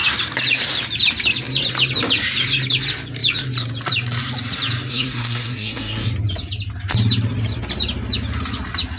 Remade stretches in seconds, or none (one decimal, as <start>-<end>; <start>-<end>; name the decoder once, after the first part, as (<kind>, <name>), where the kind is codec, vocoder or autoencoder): 4.9-6.1 (codec, SNAC)